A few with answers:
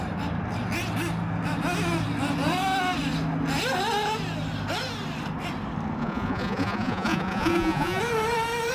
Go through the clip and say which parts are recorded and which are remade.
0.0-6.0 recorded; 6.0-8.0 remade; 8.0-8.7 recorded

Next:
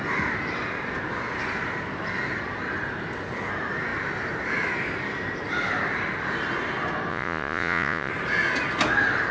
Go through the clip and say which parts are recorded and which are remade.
0.0-7.1 recorded; 7.1-8.1 remade; 8.1-9.3 recorded